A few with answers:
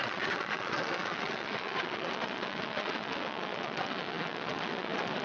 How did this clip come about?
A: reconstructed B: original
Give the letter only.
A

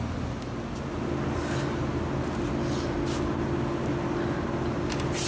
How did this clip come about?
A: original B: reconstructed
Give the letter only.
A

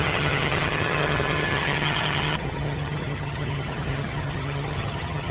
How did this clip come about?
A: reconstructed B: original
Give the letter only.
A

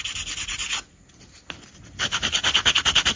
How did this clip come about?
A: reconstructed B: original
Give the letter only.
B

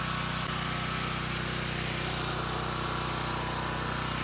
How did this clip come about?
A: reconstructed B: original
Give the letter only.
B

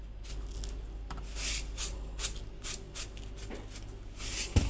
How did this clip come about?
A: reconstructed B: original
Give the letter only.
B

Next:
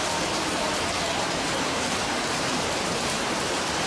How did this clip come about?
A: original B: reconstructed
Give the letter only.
B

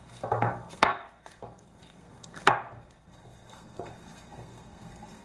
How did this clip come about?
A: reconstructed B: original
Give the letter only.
A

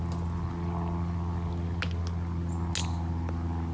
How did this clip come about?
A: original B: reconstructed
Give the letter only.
A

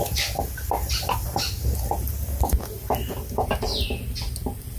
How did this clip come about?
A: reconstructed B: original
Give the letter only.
B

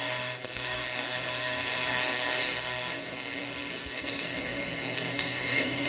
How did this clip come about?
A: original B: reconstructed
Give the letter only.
B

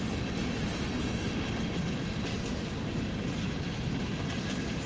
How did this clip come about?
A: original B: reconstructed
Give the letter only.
A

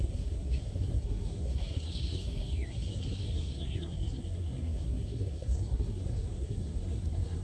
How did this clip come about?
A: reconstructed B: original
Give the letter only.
A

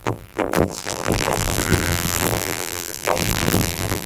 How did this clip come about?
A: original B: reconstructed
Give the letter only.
B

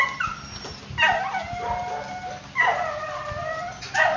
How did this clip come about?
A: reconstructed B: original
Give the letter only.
B